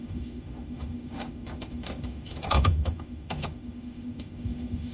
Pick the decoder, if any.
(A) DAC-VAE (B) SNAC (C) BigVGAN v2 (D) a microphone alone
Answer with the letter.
A